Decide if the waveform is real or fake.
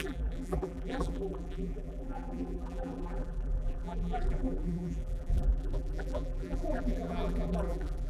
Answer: fake